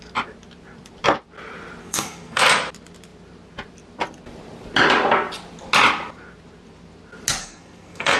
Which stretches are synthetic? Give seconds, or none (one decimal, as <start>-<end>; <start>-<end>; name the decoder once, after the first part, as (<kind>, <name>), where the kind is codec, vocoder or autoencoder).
1.8-2.4 (codec, SNAC); 7.4-8.2